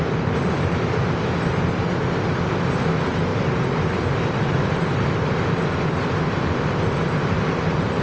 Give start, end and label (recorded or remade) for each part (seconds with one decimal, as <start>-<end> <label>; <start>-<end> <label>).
0.0-8.0 recorded